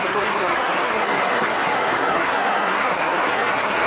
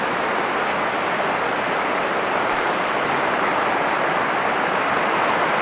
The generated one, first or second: first